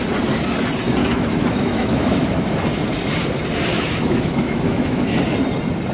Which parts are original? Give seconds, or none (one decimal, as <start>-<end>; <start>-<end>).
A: 0.0-1.0; 2.5-3.7; 5.2-5.9